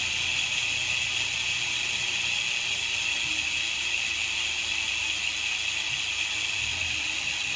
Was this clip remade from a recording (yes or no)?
no